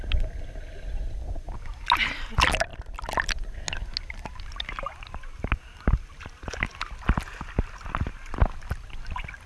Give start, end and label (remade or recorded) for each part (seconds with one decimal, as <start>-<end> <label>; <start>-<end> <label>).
0.0-9.5 recorded